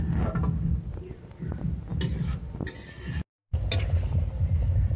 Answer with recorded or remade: recorded